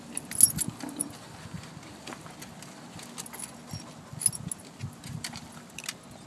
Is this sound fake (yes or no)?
no